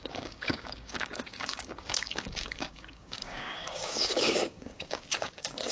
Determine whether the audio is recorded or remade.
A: remade